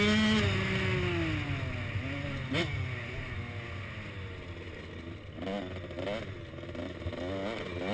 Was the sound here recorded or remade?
recorded